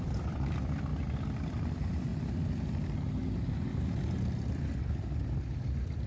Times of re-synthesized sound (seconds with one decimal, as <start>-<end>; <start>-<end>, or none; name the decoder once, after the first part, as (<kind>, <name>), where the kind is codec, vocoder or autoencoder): 0.0-2.1 (vocoder, BigVGAN v2); 4.9-6.1